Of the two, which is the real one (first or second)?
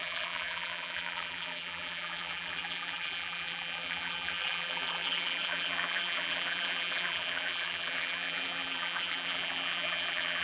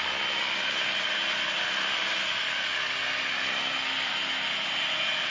second